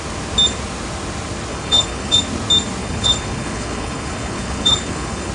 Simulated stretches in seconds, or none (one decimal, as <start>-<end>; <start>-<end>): 1.5-2.2; 2.8-5.3

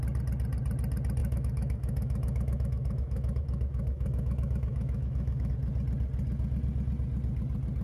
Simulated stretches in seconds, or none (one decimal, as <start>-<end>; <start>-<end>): 1.2-5.5

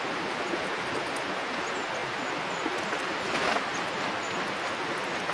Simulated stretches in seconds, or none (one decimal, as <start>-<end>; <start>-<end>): none

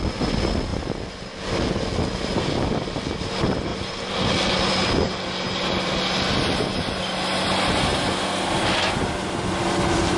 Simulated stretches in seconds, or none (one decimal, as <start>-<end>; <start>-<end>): none